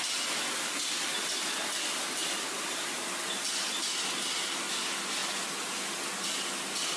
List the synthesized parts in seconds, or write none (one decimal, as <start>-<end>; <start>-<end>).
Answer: none